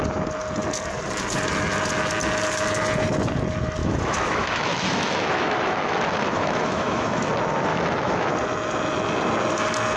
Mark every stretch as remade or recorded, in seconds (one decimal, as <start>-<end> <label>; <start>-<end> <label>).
0.0-3.8 recorded; 3.8-7.3 remade; 7.3-7.7 recorded; 7.7-8.3 remade; 8.3-10.0 recorded